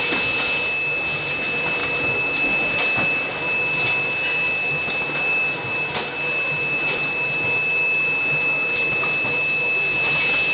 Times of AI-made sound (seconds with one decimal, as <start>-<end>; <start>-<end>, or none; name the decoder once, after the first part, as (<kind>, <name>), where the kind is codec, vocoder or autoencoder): none